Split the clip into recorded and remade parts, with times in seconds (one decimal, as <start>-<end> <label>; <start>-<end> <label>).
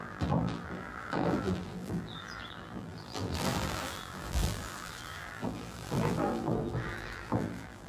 0.0-7.9 remade